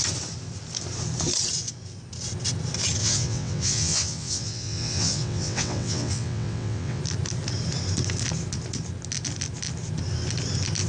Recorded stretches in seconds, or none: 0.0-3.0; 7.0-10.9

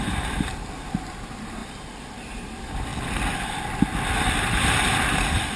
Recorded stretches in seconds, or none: 0.5-1.1; 1.6-2.2; 2.9-4.4

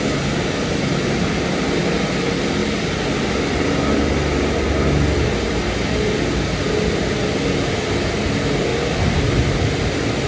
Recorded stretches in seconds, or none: 0.0-8.7

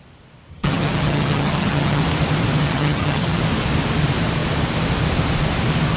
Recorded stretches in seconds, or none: 0.0-0.5; 2.0-2.6; 3.4-6.0

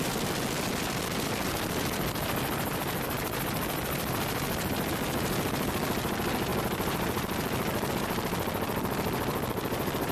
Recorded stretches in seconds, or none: none

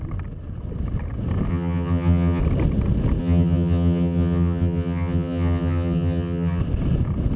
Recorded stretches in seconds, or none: 0.0-1.5; 2.4-3.2; 6.6-7.4

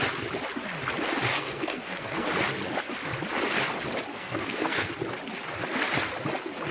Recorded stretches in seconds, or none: 0.0-1.3; 2.3-4.1; 4.9-6.7

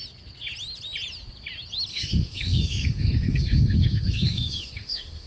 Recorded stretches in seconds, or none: 0.0-1.9